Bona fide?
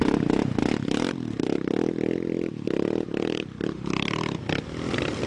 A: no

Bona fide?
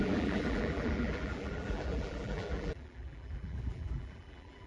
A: no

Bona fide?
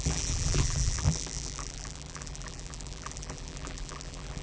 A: no